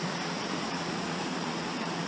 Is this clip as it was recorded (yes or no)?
no